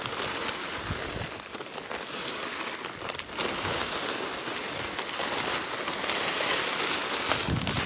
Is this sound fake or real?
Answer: real